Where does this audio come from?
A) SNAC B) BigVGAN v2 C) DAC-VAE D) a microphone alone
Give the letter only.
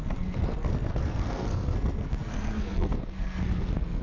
A